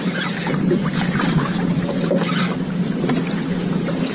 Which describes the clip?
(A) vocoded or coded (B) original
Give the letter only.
A